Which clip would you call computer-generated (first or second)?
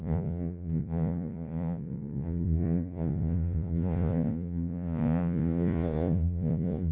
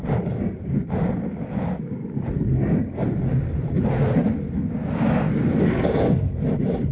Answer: first